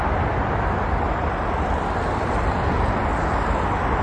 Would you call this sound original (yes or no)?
no